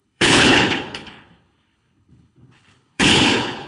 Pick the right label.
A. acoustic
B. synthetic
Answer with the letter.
B